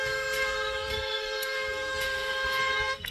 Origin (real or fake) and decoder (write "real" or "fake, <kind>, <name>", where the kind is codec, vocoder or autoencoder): fake, codec, SNAC